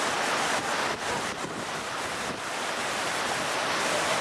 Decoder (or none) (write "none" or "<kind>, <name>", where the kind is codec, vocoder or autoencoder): none